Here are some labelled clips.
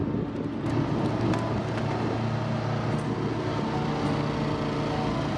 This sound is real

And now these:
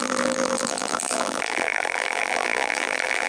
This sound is fake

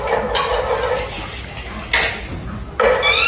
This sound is real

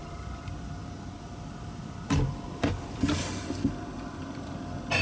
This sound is fake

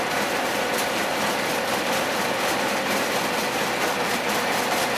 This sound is fake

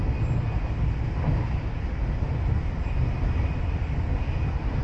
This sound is real